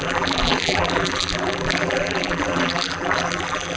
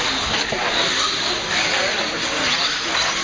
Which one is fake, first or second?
first